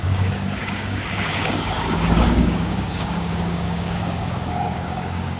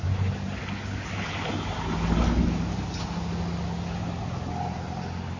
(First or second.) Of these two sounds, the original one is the second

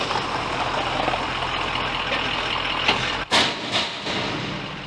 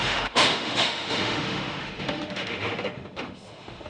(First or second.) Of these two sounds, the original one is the first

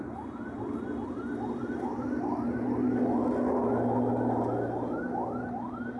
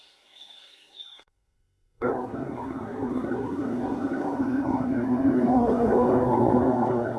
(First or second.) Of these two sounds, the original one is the first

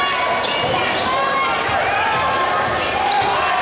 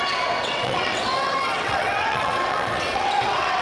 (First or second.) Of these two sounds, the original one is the first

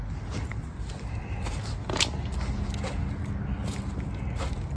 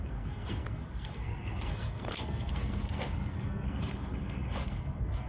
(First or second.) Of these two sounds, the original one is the first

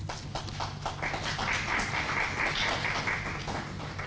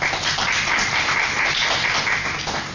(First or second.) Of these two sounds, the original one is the first